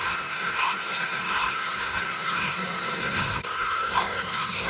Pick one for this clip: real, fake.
fake